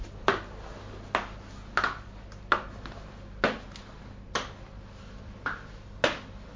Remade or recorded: recorded